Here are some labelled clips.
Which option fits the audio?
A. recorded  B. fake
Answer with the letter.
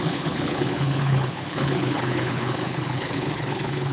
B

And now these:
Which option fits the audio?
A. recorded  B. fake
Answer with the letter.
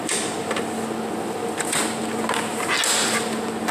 A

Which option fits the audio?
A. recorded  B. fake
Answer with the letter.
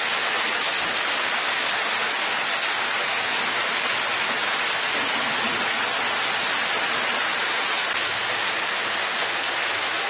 A